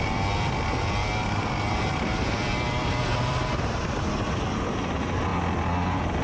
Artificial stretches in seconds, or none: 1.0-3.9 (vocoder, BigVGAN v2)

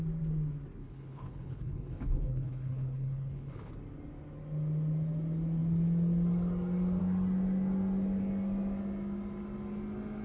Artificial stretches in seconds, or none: 0.8-3.7 (codec, HILCodec)

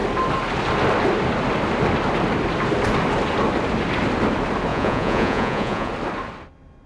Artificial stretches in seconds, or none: 4.7-5.9 (vocoder, Vocos)